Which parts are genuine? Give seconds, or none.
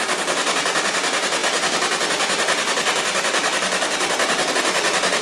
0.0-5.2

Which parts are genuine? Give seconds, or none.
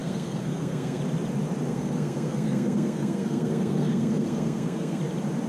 1.0-1.7; 5.0-5.5